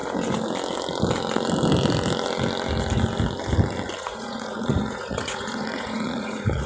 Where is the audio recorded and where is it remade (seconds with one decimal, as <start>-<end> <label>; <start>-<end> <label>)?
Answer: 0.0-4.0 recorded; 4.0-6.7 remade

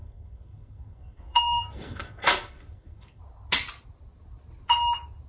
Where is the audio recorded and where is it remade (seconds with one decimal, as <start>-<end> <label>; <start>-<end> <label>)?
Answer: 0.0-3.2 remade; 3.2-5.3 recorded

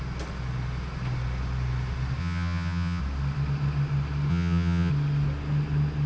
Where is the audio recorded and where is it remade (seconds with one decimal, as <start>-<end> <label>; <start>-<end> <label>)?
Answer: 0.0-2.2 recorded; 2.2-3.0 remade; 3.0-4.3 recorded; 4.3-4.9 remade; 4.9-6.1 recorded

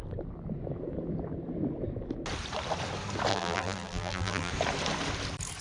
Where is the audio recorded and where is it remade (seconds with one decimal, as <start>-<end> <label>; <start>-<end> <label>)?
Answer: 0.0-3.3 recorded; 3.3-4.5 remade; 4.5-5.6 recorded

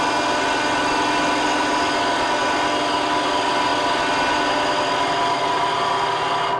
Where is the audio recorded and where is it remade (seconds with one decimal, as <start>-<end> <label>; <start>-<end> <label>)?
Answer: 0.0-6.6 recorded

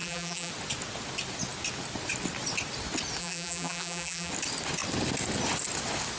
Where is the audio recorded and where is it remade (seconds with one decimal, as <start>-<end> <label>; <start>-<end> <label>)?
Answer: 0.0-0.5 remade; 0.5-3.2 recorded; 3.2-4.3 remade; 4.3-6.2 recorded